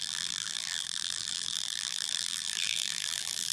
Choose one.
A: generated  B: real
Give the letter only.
A